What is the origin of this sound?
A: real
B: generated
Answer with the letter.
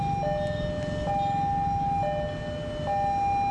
A